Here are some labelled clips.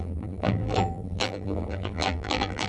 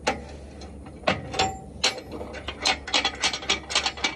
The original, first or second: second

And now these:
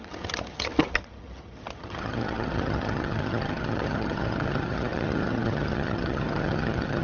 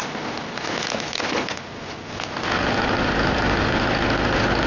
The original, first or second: second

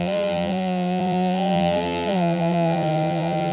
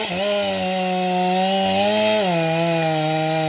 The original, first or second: second